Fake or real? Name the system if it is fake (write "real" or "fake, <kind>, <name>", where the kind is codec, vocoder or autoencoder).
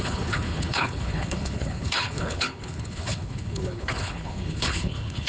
fake, codec, HILCodec